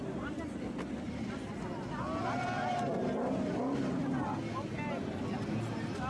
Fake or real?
real